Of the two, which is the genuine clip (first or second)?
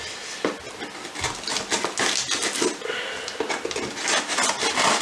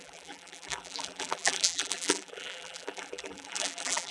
first